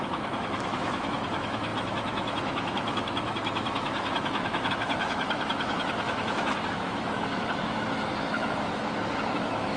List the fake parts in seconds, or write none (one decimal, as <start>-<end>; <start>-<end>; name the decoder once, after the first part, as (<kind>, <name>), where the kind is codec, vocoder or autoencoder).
0.0-9.8 (autoencoder, DAC-VAE)